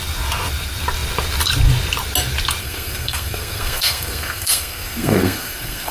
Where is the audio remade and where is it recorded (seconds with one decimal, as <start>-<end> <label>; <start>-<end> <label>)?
0.0-2.6 recorded; 2.6-5.9 remade